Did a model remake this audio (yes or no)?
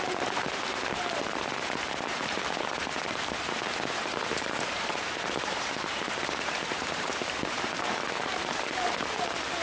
yes